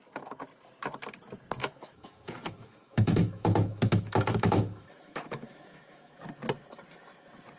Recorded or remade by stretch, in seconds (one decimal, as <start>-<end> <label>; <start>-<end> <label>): 0.0-1.6 recorded; 1.6-6.2 remade; 6.2-7.6 recorded